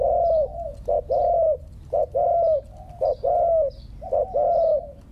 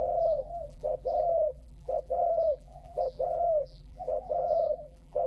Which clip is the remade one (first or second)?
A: second